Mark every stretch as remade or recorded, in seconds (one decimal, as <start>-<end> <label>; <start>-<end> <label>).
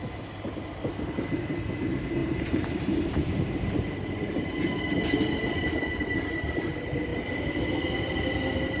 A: 0.0-2.2 recorded; 2.2-4.6 remade; 4.6-8.8 recorded